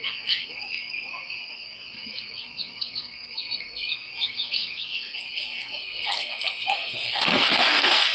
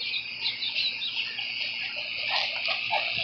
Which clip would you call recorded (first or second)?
second